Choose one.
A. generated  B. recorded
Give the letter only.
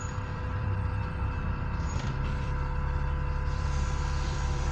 A